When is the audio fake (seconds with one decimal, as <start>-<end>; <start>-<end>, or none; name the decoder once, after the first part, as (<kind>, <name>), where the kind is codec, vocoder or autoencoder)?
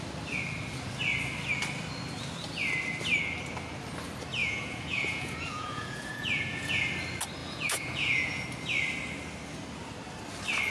4.4-6.9 (vocoder, Vocos); 7.4-8.4